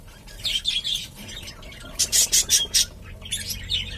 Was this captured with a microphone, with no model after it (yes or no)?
no